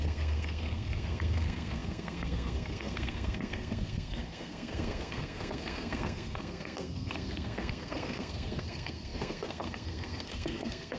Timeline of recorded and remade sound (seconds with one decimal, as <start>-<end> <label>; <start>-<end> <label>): 0.0-11.0 remade